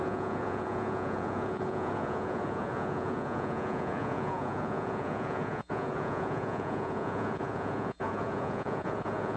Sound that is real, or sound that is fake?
fake